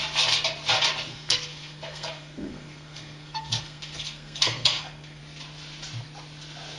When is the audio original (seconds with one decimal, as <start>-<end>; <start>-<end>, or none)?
0.0-1.1; 5.2-6.8